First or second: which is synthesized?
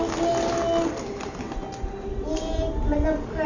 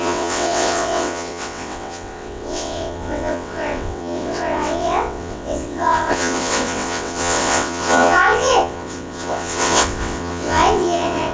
second